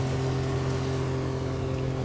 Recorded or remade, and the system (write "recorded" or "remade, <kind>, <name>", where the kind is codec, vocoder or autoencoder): recorded